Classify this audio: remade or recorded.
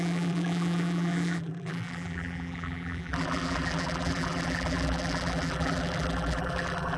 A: remade